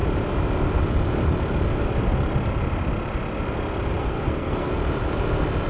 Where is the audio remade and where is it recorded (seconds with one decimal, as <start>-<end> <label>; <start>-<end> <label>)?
0.0-4.0 recorded; 4.0-4.7 remade; 4.7-5.7 recorded